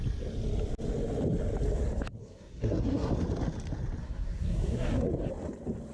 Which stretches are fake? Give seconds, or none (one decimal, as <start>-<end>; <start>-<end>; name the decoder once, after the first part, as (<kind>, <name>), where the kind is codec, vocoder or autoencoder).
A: 2.2-3.1 (codec, SNAC); 4.0-5.1